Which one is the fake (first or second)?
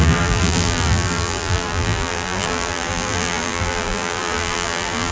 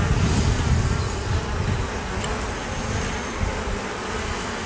first